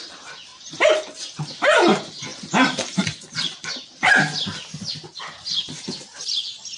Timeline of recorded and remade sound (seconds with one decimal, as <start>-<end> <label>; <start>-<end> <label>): 0.0-0.5 recorded; 0.5-1.4 remade; 1.4-2.3 recorded; 2.3-4.2 remade; 4.2-6.8 recorded